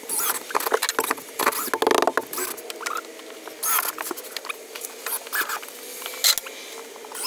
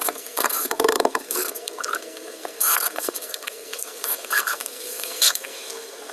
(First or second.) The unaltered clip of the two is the first